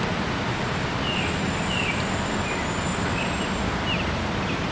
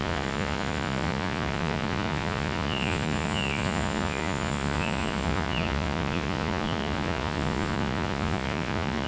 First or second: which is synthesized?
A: second